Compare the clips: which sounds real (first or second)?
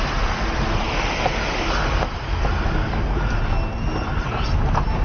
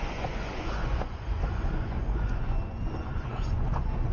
first